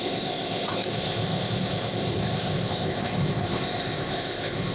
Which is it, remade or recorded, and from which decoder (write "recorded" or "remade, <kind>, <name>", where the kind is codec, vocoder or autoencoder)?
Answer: remade, codec, ZipCodec